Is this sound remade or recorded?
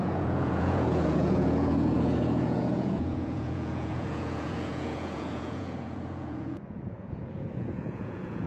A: remade